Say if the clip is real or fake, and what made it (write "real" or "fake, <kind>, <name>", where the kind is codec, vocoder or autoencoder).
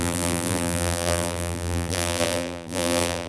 fake, vocoder, BigVGAN v2